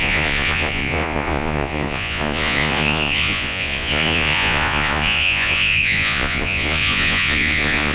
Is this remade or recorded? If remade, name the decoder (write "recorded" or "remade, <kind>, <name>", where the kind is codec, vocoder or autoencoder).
remade, vocoder, Vocos